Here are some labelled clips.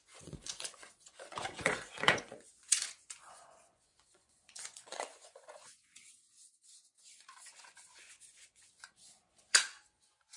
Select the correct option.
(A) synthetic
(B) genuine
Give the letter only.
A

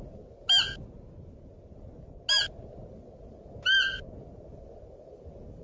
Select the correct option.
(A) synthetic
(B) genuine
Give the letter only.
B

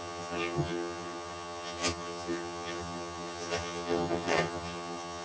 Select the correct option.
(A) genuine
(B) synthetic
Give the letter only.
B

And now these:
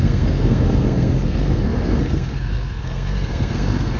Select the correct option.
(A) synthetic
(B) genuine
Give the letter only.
A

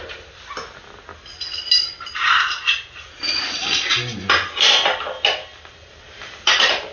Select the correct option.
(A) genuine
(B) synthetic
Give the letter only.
A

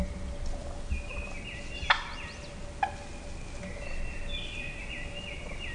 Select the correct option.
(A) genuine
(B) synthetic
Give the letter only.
A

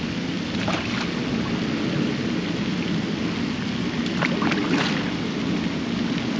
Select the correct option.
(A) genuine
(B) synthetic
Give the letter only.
A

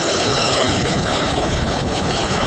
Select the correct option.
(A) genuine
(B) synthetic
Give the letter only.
B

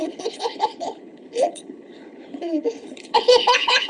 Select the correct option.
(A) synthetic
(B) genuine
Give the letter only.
A